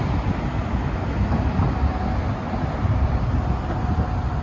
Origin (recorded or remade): recorded